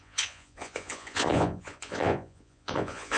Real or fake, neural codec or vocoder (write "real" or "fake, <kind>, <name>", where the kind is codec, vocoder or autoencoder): fake, vocoder, Vocos